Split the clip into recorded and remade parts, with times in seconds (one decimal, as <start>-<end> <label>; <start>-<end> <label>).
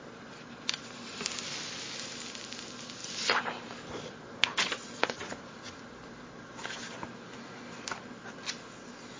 0.0-9.2 recorded